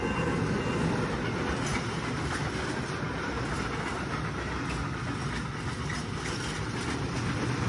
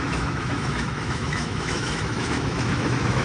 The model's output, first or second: second